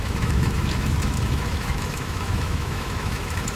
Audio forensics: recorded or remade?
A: remade